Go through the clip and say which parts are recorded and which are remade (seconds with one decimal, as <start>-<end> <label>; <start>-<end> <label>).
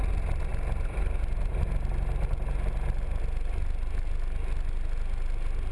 0.0-0.5 recorded; 0.5-3.9 remade; 3.9-5.7 recorded